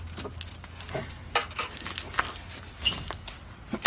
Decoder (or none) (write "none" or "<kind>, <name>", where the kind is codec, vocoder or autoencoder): none